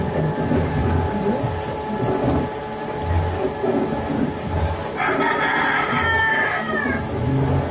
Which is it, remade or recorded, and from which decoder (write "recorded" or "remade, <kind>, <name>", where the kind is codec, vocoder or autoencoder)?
recorded